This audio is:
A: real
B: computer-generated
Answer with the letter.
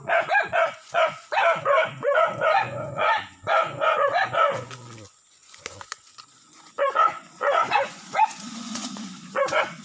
B